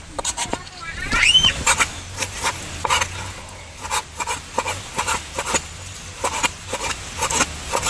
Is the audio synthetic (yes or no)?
no